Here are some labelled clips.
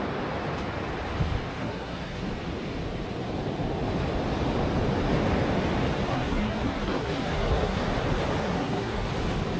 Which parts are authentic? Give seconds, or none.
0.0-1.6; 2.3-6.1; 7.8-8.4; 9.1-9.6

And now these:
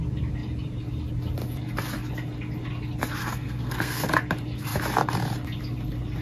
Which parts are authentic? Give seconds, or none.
0.0-3.2; 4.1-6.2